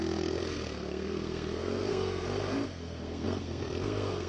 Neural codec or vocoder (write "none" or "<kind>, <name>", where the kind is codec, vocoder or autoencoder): codec, SNAC